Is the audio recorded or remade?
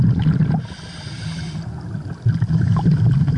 recorded